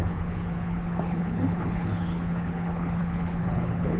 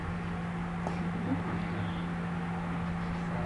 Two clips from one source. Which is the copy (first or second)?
first